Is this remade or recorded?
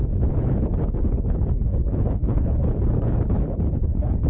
remade